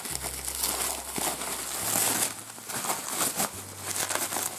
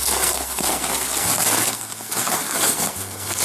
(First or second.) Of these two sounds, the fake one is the second